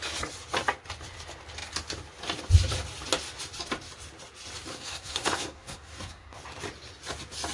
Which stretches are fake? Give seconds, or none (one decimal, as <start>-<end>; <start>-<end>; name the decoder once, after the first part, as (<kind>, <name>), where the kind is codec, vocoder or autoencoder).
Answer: 4.7-6.4 (codec, SNAC)